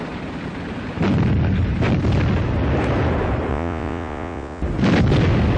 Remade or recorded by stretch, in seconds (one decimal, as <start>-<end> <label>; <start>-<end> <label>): 0.0-3.5 recorded; 3.5-4.6 remade; 4.6-5.6 recorded